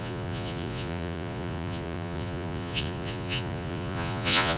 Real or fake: fake